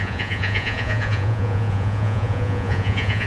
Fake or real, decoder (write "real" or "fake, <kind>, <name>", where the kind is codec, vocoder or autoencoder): fake, vocoder, Vocos